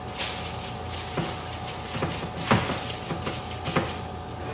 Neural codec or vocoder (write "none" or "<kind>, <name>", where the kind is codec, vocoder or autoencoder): none